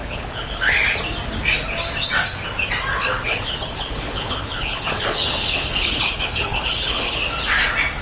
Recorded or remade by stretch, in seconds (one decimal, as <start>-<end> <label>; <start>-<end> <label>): 0.0-0.7 remade; 0.7-2.9 recorded; 2.9-7.2 remade; 7.2-8.0 recorded